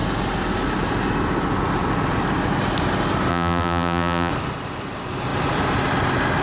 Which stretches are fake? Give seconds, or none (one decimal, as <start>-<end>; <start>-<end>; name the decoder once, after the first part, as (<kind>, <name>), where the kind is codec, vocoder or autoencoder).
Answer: 3.3-4.3 (vocoder, BigVGAN v2)